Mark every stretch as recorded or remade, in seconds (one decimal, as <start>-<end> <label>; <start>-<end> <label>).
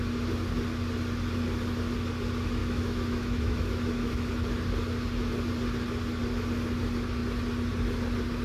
0.0-2.6 recorded; 2.6-4.3 remade; 4.3-8.4 recorded